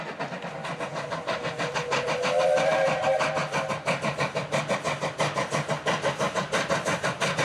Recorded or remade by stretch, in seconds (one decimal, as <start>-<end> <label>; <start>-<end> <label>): 0.0-0.6 recorded; 0.6-2.7 remade; 2.7-7.4 recorded